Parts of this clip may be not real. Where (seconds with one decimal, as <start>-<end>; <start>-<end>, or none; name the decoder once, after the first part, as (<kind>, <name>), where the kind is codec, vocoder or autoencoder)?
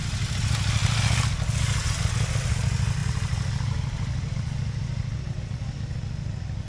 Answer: none